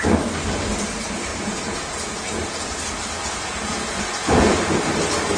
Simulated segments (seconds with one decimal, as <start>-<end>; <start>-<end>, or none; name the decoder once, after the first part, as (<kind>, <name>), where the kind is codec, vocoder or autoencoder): 1.3-2.8 (vocoder, Vocos); 3.2-4.6